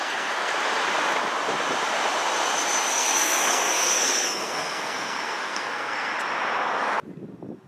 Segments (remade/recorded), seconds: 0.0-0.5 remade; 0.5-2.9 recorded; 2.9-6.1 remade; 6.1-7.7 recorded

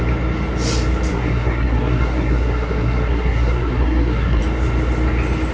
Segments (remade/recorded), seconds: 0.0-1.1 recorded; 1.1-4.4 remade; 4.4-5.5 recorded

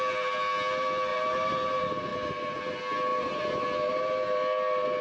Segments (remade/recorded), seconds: 0.0-1.1 recorded; 1.1-1.7 remade; 1.7-2.1 recorded; 2.1-2.7 remade; 2.7-3.1 recorded; 3.1-4.0 remade; 4.0-5.0 recorded